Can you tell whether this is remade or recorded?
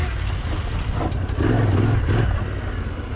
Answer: recorded